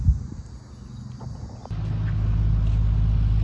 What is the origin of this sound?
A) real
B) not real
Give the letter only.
A